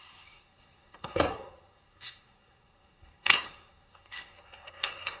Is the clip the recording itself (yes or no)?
no